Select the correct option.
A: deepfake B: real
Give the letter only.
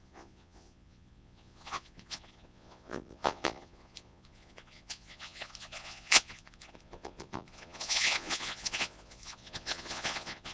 A